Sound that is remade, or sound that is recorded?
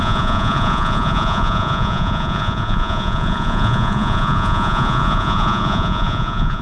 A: remade